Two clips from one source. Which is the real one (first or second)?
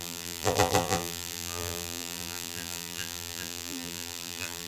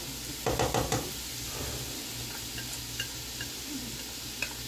second